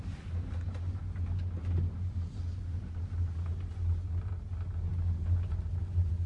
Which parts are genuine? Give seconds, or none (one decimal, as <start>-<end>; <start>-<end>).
0.0-6.3